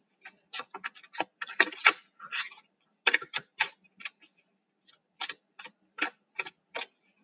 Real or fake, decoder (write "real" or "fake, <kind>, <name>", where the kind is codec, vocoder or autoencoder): real